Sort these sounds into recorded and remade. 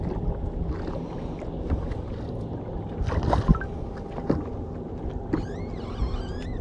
recorded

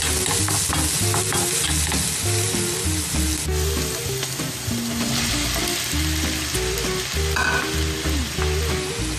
recorded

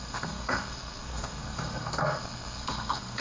remade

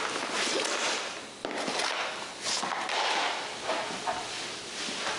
recorded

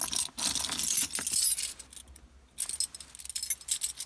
recorded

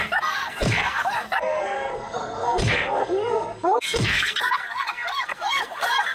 remade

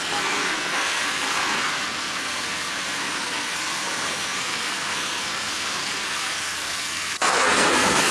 remade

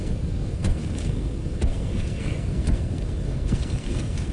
remade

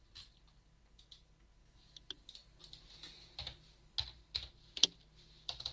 recorded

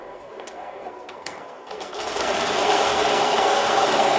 remade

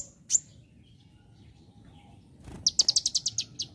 recorded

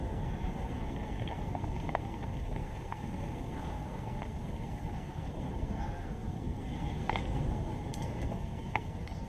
remade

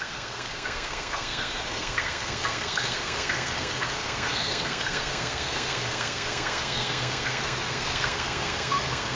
remade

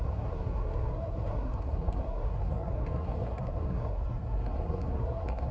remade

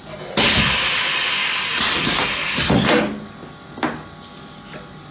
recorded